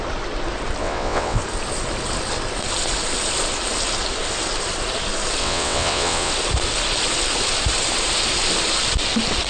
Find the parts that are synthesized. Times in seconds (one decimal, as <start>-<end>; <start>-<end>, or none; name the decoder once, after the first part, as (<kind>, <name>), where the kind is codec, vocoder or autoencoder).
0.8-1.4 (vocoder, WaveNeXt); 5.4-6.3